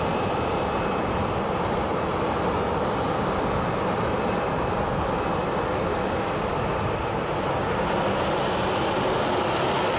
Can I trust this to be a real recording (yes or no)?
yes